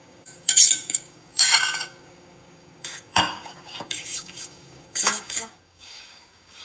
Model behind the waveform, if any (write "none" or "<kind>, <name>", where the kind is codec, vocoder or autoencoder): codec, DAC